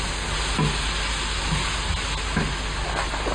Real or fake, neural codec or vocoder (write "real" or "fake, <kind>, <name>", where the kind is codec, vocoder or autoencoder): real